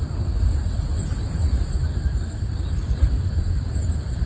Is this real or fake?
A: fake